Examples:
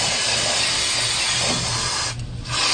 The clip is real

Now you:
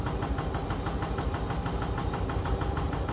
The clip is real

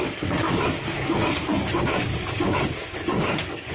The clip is fake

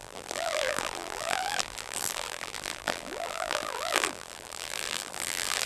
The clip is fake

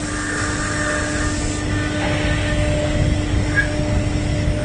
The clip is real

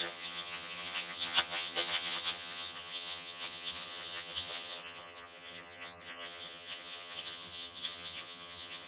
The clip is fake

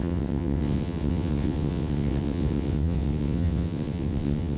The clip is fake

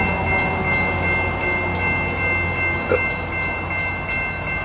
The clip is real